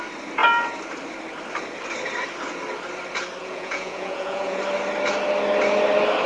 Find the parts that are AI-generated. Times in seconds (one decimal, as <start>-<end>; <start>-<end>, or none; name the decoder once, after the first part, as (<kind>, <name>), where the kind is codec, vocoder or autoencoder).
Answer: 3.4-4.6 (vocoder, Vocos)